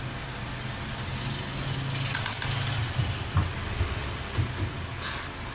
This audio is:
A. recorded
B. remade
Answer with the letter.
A